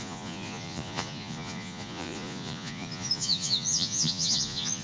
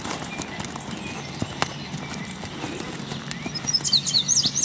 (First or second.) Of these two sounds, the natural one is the second